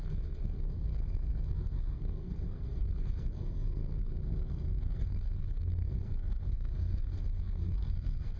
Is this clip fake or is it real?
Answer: fake